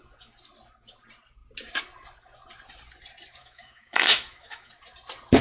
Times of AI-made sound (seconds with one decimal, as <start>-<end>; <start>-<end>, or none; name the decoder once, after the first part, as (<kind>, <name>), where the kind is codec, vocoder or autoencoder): 3.4-4.7 (autoencoder, DAC-VAE)